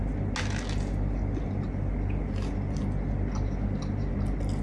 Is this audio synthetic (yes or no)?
no